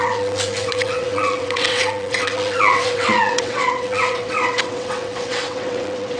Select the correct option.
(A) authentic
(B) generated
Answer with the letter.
B